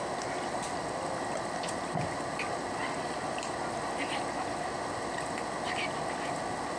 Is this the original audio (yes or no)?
yes